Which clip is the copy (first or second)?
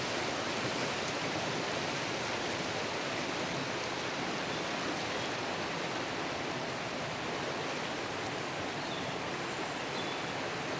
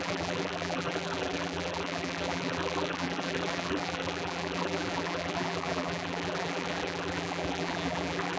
second